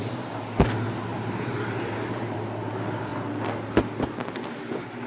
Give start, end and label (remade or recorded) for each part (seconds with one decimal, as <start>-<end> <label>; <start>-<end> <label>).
0.0-1.1 recorded; 1.1-2.4 remade; 2.4-5.1 recorded